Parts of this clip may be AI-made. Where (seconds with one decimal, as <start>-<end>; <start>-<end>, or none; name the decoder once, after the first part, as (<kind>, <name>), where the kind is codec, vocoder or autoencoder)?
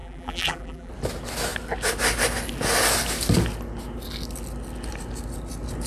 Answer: 0.0-0.9 (vocoder, BigVGAN v2)